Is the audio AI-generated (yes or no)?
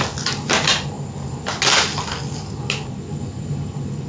no